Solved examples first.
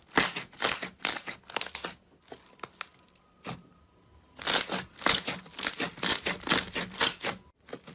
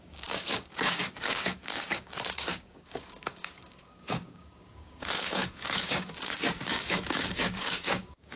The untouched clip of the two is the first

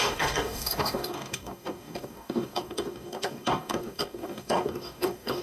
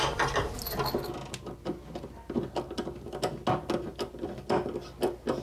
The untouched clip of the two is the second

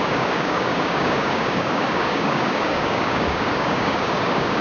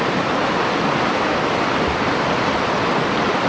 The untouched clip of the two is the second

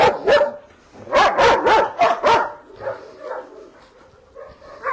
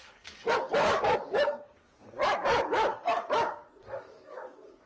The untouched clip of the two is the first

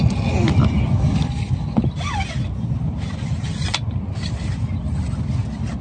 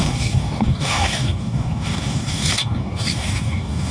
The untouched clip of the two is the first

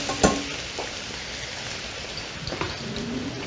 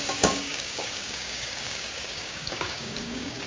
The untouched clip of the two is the first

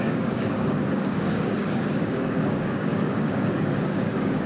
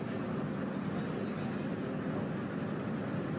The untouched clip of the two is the second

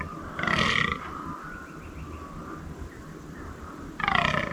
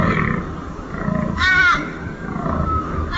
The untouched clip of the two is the first